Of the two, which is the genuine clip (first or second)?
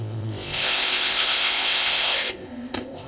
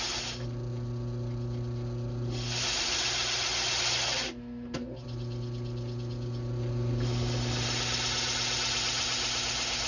second